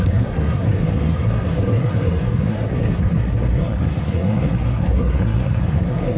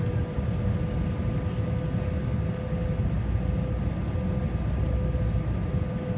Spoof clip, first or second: first